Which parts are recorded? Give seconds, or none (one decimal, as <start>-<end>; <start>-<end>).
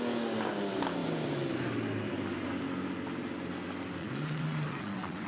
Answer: 0.0-4.0